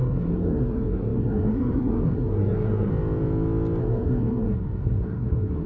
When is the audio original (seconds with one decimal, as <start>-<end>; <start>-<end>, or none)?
2.9-3.8